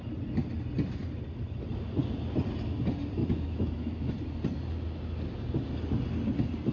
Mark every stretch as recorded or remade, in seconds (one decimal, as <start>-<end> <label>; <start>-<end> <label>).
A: 0.0-3.2 recorded; 3.2-4.1 remade; 4.1-6.7 recorded